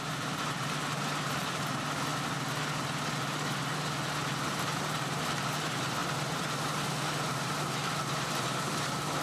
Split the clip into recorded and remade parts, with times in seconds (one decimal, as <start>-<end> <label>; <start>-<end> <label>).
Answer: 0.0-2.1 remade; 2.1-4.5 recorded; 4.5-9.2 remade